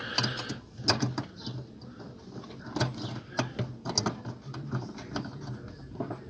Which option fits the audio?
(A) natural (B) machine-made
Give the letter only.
A